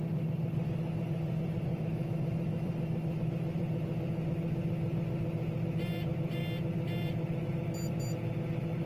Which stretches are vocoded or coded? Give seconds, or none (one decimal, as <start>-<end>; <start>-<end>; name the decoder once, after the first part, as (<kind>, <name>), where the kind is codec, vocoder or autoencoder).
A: 1.7-3.2 (autoencoder, DAC-VAE)